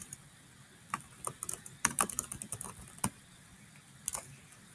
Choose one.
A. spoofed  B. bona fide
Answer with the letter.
B